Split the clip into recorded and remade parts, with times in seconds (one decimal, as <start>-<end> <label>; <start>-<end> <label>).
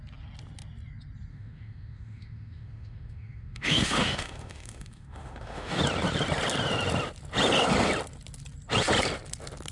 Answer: 0.0-1.3 recorded; 1.3-5.8 remade; 5.8-9.7 recorded